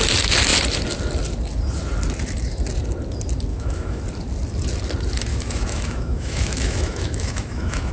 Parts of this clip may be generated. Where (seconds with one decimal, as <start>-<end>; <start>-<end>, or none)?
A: 3.5-4.0; 5.3-7.9